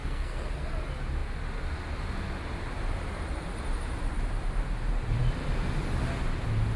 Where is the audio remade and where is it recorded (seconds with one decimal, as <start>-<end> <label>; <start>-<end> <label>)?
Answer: 0.0-0.7 remade; 0.7-6.8 recorded